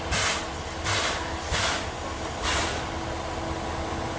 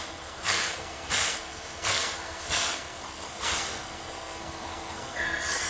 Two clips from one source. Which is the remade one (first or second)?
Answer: second